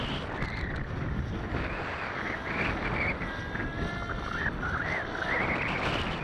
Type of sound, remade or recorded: recorded